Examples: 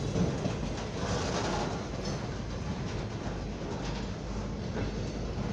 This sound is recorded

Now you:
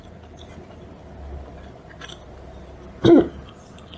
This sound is recorded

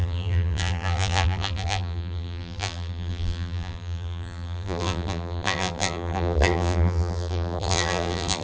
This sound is remade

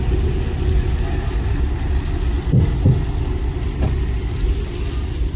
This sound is recorded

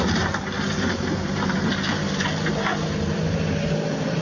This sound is recorded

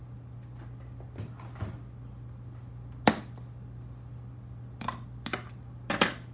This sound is recorded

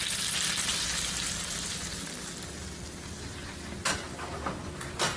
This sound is remade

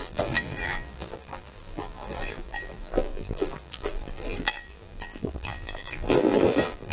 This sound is remade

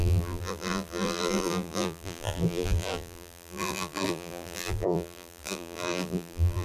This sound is remade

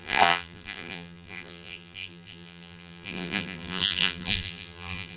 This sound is remade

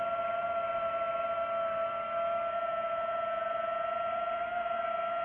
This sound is recorded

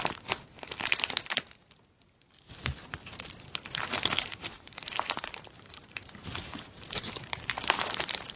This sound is remade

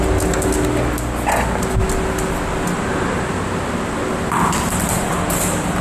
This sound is recorded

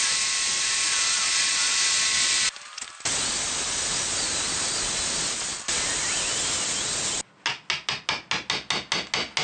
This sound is recorded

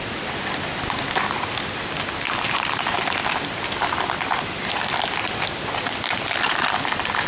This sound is remade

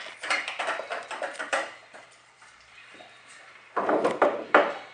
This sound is remade